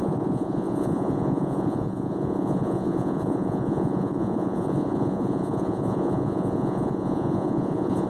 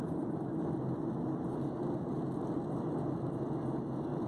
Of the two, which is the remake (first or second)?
first